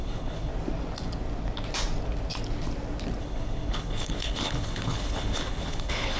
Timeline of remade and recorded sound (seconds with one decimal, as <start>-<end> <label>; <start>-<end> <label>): 0.0-0.5 remade; 0.5-3.2 recorded; 3.2-6.2 remade